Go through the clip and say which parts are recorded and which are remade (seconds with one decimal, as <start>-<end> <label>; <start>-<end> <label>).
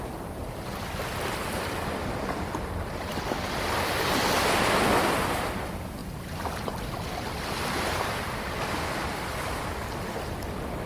0.0-6.0 recorded; 6.0-10.1 remade; 10.1-10.9 recorded